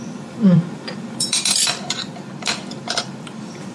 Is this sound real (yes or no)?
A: no